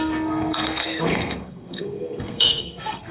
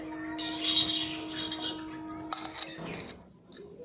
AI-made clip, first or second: first